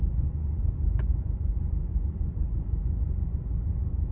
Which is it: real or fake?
fake